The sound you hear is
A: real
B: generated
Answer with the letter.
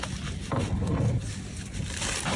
A